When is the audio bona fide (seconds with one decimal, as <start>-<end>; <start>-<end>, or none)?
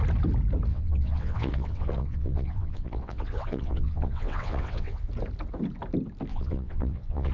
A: 0.0-0.7; 5.1-6.3